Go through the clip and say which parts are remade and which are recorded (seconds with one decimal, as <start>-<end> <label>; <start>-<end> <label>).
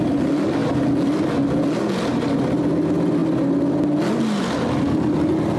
0.0-5.6 recorded